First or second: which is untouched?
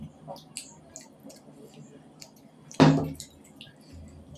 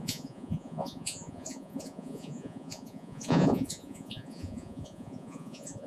first